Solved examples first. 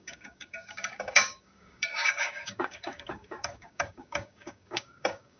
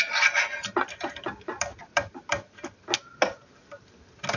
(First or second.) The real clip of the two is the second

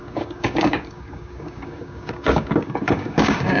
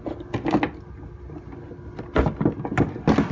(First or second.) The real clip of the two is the second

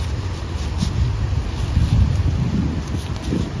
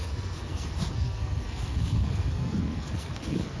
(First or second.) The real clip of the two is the first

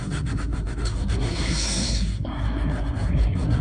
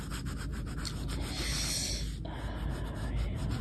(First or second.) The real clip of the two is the second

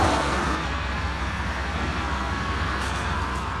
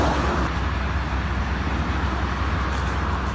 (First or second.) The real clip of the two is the second